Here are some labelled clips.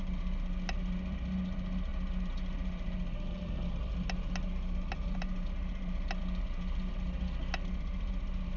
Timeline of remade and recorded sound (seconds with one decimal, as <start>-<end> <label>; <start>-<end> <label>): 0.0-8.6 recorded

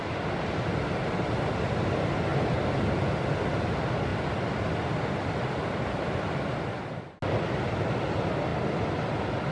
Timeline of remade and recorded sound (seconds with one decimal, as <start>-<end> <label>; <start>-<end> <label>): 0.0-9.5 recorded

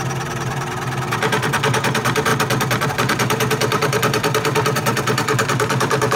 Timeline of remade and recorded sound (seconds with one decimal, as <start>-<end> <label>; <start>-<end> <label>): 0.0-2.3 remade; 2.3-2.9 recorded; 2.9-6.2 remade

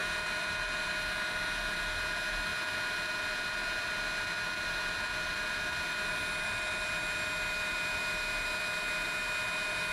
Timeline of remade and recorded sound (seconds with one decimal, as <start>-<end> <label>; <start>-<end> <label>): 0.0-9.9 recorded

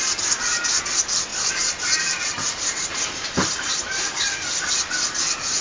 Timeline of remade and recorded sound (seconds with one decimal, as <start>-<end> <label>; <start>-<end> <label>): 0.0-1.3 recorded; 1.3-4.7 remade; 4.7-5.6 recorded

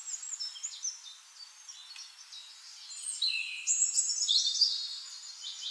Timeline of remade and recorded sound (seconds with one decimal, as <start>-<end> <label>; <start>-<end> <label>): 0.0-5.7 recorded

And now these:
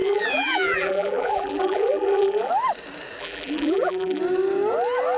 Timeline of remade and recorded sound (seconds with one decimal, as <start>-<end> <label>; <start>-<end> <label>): 0.0-2.5 remade; 2.5-3.2 recorded; 3.2-4.2 remade; 4.2-5.2 recorded

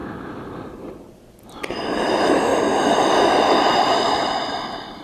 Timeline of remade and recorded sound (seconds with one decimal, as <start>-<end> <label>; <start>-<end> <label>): 0.0-0.7 recorded; 0.7-2.5 remade; 2.5-5.0 recorded